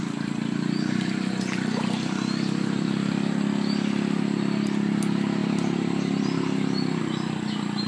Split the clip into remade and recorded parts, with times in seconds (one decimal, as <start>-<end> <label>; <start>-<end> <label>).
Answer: 0.0-7.9 recorded